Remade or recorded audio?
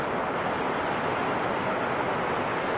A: recorded